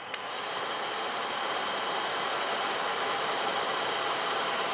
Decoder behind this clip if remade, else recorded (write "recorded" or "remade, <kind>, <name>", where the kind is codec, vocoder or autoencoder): remade, vocoder, BigVGAN v2